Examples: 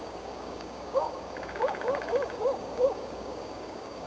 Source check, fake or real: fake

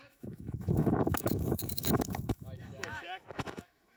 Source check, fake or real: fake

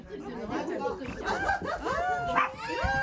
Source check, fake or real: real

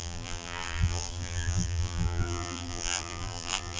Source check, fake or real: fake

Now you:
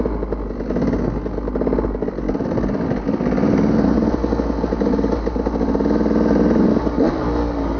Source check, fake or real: real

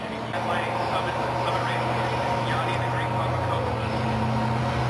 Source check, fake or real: real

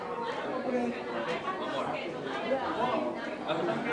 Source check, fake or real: real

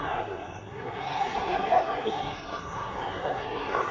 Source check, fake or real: fake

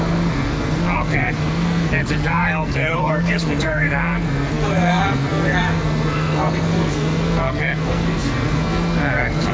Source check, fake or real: fake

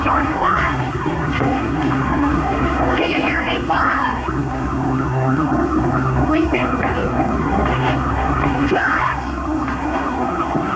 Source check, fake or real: fake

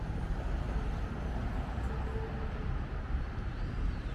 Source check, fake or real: real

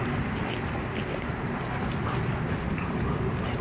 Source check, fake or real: real